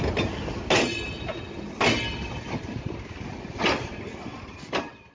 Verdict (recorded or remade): recorded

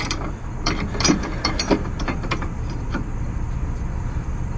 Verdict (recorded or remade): remade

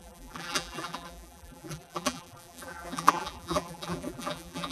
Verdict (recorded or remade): remade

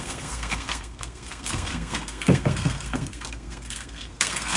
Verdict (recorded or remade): remade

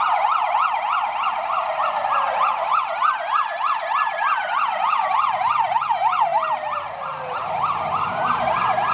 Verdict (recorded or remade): recorded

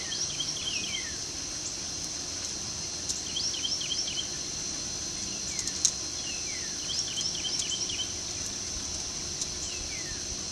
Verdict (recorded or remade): recorded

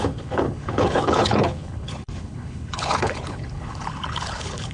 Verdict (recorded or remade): remade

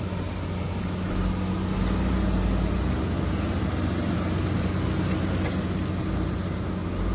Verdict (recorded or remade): recorded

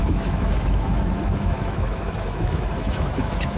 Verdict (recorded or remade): remade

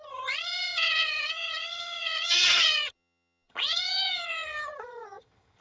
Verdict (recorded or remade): remade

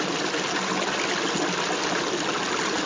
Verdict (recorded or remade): recorded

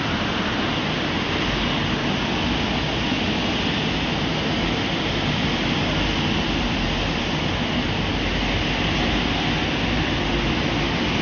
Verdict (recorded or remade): recorded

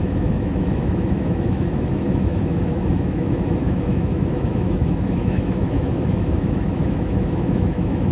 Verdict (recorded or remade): remade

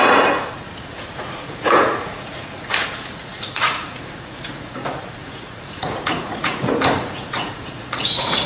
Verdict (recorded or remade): remade